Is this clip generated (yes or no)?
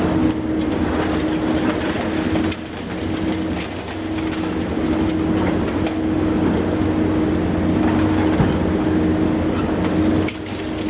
no